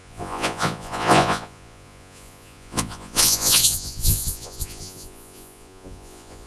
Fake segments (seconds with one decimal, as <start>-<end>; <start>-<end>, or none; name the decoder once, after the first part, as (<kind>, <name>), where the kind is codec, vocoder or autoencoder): 0.0-6.5 (vocoder, Vocos)

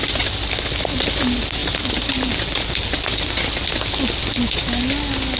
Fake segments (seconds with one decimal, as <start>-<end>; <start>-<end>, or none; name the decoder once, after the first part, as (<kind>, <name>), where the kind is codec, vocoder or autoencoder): none

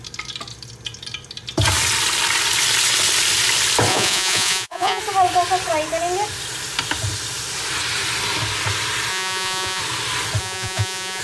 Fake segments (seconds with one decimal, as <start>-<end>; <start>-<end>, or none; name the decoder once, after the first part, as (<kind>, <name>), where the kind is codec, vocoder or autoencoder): 3.9-5.0 (vocoder, Vocos); 9.1-9.8; 10.4-11.2

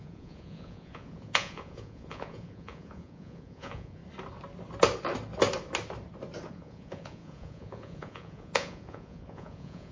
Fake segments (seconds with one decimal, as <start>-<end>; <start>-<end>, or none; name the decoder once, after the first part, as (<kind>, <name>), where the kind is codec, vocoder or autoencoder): 0.0-4.0 (vocoder, Vocos); 6.5-9.9

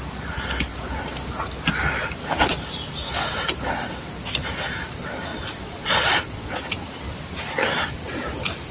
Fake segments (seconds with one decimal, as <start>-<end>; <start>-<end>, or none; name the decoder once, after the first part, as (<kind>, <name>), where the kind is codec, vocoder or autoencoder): 5.3-6.6 (vocoder, Vocos)

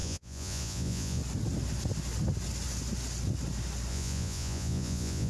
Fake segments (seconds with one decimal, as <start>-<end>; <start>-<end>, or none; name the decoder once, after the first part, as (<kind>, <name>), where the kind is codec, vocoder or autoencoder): 0.0-1.2 (vocoder, Vocos); 3.9-5.3

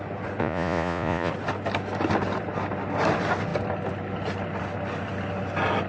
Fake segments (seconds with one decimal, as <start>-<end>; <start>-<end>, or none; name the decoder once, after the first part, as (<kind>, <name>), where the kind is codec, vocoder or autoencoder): 0.4-1.3 (vocoder, Vocos)